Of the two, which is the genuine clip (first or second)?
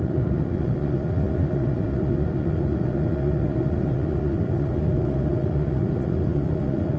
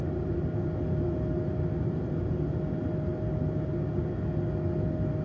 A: second